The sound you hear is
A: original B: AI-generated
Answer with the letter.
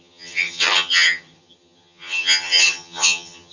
B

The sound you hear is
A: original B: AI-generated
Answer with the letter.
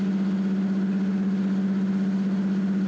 A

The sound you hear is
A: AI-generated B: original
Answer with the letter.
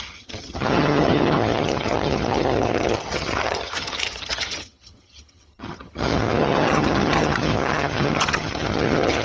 A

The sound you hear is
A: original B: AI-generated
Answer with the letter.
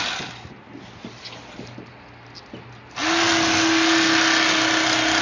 A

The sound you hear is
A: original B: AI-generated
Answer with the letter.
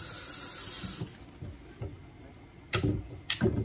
A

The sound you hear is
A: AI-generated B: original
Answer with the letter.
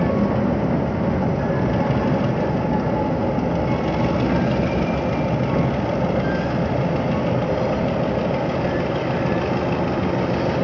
B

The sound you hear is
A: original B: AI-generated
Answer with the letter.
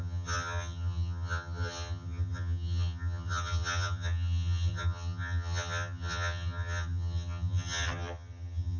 B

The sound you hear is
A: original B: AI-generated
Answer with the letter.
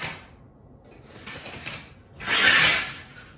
A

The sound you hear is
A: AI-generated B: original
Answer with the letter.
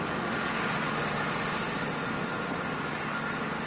B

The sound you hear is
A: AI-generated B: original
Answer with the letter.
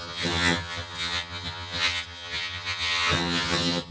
A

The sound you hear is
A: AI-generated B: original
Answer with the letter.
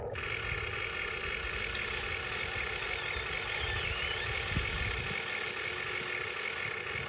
B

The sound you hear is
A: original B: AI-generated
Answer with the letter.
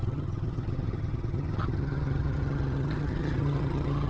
B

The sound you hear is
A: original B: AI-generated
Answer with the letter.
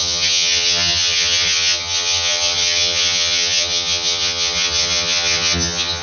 B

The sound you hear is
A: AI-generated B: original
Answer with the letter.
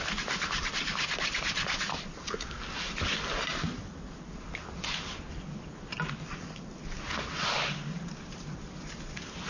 B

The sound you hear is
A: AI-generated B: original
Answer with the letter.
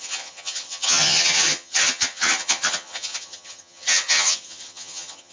A